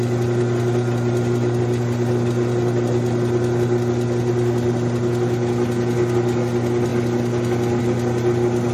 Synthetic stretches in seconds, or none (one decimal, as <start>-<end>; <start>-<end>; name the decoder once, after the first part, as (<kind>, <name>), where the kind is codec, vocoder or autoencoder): none